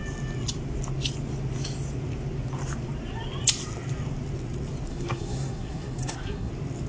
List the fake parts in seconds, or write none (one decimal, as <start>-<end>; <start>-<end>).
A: 4.9-6.5